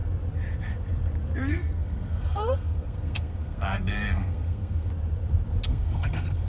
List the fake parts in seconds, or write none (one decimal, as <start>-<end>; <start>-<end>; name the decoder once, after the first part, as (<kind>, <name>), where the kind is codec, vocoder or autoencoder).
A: 1.5-4.9 (codec, SNAC); 5.7-6.5